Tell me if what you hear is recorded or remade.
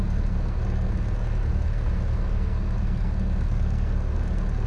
remade